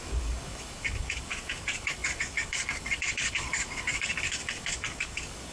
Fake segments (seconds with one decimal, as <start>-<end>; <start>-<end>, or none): 0.0-5.5